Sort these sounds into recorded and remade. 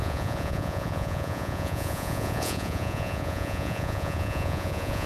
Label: remade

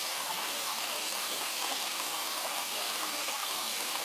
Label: remade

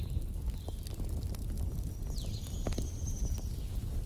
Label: recorded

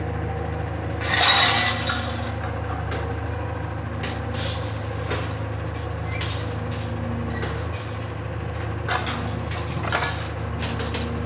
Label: recorded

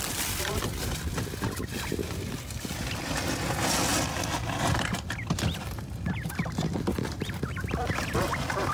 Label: recorded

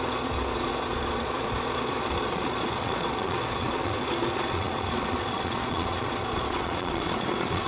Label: remade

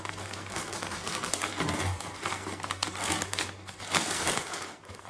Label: remade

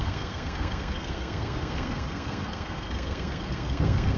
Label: remade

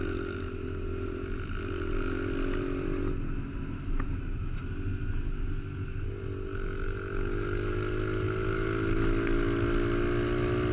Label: recorded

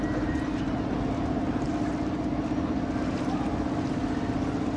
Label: recorded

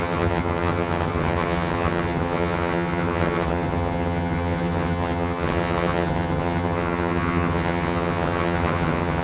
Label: remade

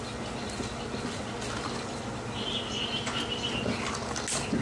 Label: recorded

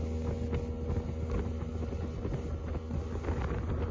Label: recorded